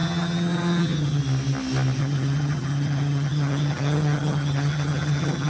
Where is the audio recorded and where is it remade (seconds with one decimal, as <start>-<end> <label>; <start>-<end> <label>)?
0.0-1.2 remade; 1.2-2.0 recorded; 2.0-5.5 remade